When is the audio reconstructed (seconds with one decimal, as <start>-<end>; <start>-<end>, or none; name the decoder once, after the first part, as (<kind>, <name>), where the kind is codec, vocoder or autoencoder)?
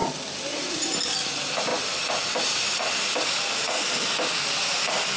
none